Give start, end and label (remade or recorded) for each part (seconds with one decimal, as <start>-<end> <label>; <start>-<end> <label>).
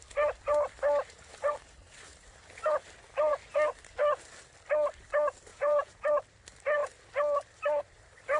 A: 0.0-5.5 recorded; 5.5-6.1 remade; 6.1-8.4 recorded